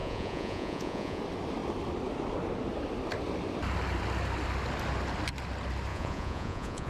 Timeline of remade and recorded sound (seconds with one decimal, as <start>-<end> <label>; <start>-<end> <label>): 0.0-1.2 remade; 1.2-5.9 recorded; 5.9-6.9 remade